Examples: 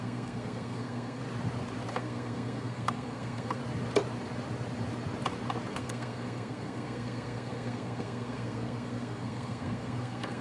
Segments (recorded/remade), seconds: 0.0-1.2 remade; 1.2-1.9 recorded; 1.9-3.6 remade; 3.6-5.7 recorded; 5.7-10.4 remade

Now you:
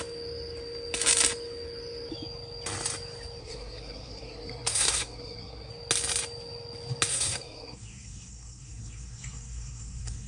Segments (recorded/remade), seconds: 0.0-3.4 recorded; 3.4-5.7 remade; 5.7-7.1 recorded; 7.1-10.3 remade

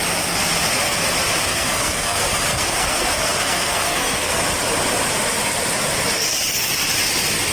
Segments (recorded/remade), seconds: 0.0-1.5 recorded; 1.5-4.4 remade; 4.4-7.5 recorded

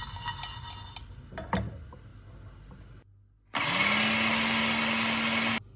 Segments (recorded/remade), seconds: 0.0-5.8 recorded